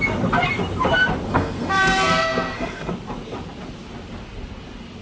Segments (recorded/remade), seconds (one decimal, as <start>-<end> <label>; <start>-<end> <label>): 0.0-1.3 recorded; 1.3-2.9 remade; 2.9-5.0 recorded